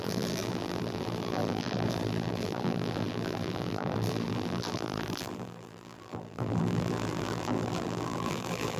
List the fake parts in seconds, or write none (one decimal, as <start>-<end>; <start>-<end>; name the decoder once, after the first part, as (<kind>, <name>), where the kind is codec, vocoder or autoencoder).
0.0-8.8 (vocoder, BigVGAN v2)